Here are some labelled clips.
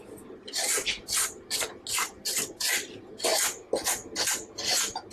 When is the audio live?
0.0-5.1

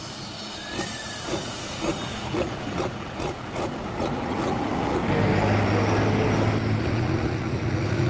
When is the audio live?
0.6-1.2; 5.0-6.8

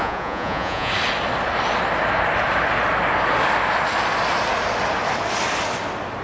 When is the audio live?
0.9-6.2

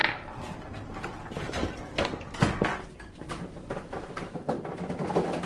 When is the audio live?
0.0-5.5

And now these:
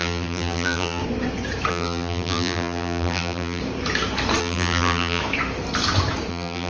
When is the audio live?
1.0-1.7; 3.6-4.4; 5.2-6.3

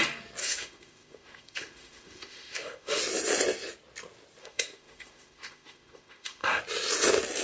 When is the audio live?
0.0-0.4; 3.0-4.4; 6.6-7.4